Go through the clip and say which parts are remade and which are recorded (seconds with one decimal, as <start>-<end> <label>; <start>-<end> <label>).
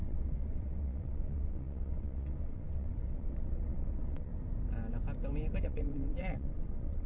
0.0-4.3 remade; 4.3-5.6 recorded; 5.6-7.1 remade